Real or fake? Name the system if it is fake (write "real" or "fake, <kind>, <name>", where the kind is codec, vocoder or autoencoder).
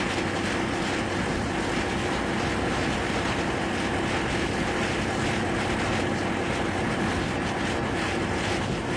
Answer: real